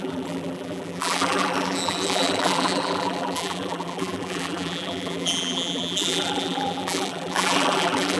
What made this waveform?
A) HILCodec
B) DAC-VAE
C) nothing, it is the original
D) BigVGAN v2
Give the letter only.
D